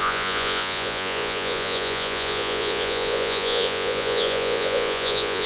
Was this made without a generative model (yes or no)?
no